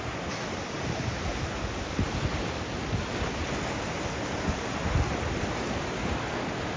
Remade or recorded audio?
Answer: recorded